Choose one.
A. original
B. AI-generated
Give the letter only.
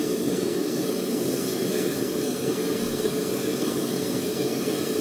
B